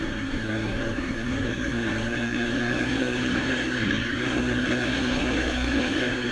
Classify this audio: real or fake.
fake